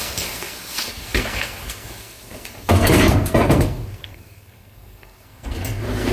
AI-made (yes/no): yes